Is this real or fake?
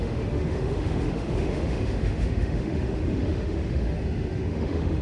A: fake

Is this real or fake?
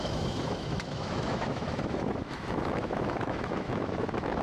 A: fake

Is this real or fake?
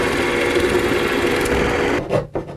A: real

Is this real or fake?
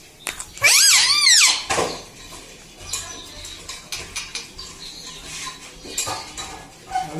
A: real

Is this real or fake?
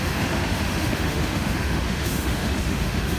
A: fake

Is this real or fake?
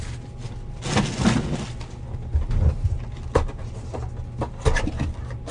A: real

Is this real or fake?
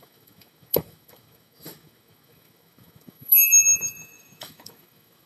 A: fake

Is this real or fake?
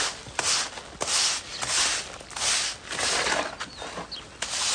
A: real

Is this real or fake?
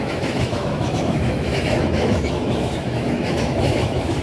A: fake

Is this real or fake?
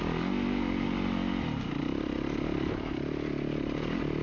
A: real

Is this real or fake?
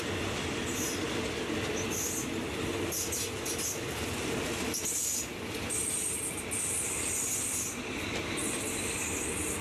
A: real